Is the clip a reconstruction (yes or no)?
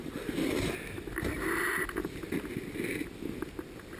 no